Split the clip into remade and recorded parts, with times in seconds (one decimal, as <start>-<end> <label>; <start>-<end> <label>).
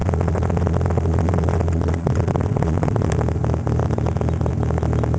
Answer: 0.0-3.1 remade; 3.1-5.2 recorded